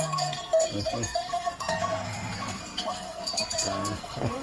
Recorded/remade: remade